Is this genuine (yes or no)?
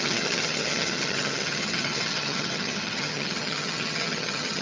no